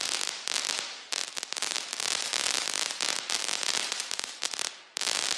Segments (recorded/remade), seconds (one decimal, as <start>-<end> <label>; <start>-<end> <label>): 0.0-5.4 recorded